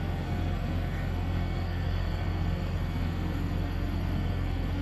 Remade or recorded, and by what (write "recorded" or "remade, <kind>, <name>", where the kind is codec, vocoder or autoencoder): remade, codec, SNAC